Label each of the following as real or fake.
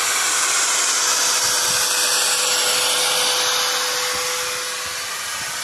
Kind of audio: real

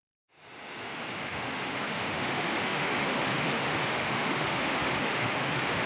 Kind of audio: fake